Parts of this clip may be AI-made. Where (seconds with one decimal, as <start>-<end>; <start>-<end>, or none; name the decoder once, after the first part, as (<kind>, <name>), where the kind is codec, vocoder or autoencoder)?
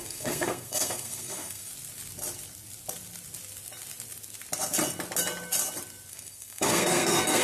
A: 0.0-1.7 (codec, SNAC); 6.1-7.4